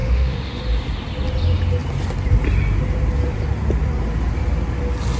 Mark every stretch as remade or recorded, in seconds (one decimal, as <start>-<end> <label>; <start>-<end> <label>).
0.0-0.6 remade; 0.6-5.2 recorded